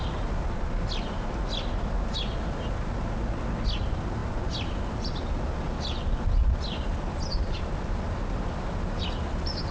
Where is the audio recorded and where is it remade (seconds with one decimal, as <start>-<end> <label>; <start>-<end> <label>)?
0.0-9.7 recorded